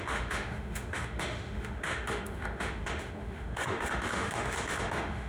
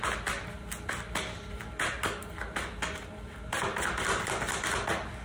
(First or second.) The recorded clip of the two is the second